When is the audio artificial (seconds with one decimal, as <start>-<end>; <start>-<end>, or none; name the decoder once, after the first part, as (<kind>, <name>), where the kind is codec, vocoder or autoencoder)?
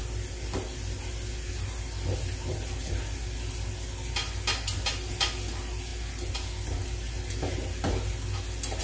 none